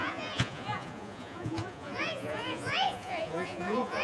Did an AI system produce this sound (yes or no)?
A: yes